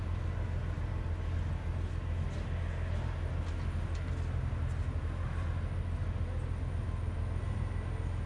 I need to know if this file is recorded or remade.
recorded